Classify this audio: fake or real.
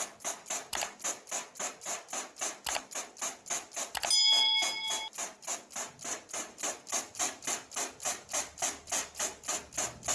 real